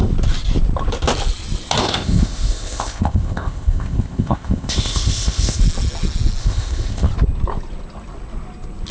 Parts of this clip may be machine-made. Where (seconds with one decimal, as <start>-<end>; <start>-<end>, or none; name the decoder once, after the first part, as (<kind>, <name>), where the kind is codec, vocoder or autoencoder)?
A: 1.8-5.6 (codec, ZipCodec); 6.4-7.1